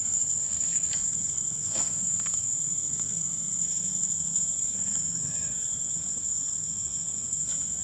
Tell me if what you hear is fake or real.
fake